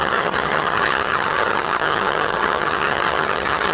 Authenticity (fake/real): fake